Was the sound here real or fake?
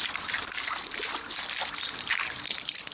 real